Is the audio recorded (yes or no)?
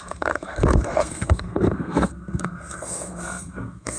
no